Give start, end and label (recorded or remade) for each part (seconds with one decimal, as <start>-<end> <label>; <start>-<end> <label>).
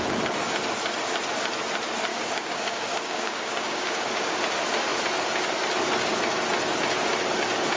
0.0-2.1 recorded; 2.1-4.4 remade; 4.4-7.8 recorded